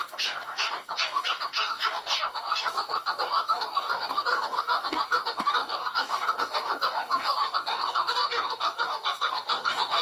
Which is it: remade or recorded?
remade